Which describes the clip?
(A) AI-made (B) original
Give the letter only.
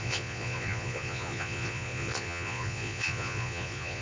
A